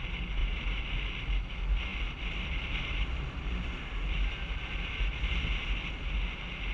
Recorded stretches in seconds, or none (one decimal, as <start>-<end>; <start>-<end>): 0.0-0.4; 0.9-1.9; 5.9-6.7